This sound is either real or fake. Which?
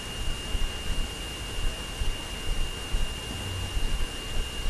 real